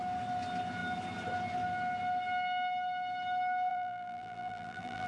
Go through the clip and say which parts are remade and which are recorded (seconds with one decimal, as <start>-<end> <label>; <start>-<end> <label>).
0.0-3.7 recorded; 3.7-5.1 remade